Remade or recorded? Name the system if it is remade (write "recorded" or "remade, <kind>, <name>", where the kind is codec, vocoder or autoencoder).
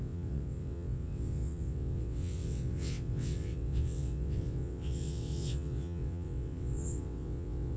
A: remade, vocoder, WaveNeXt